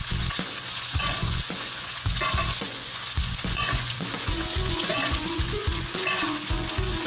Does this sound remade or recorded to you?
remade